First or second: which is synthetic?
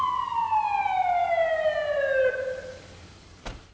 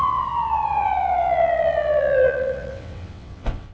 second